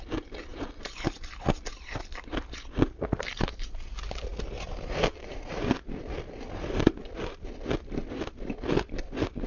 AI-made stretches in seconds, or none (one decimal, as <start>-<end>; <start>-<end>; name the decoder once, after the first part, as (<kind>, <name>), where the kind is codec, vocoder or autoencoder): none